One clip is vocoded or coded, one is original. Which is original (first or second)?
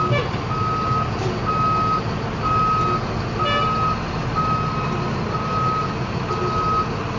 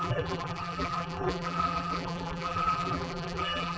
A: first